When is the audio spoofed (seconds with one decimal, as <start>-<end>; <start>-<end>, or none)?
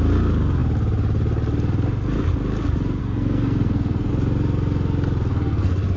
3.0-4.1; 5.3-6.0